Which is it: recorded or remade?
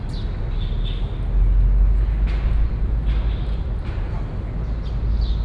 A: recorded